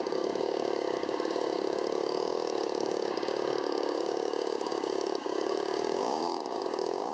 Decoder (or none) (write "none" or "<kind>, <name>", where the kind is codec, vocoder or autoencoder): codec, DAC